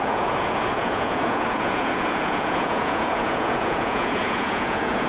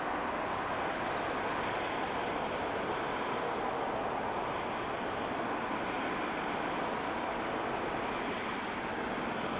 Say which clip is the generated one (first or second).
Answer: first